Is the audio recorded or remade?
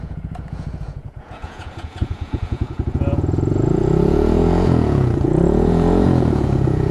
remade